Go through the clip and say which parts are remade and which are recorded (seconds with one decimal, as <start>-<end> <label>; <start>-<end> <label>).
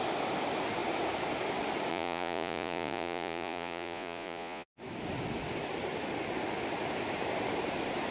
0.0-1.9 recorded; 1.9-4.8 remade; 4.8-8.1 recorded